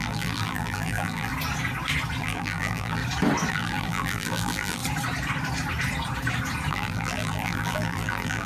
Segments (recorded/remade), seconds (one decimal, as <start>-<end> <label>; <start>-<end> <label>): 0.0-1.3 remade; 1.3-2.2 recorded; 2.2-3.0 remade; 3.0-3.5 recorded; 3.5-4.8 remade; 4.8-6.7 recorded; 6.7-8.5 remade